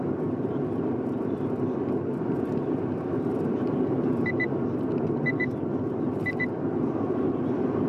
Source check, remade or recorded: recorded